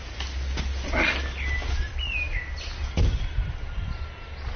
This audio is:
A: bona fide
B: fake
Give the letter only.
A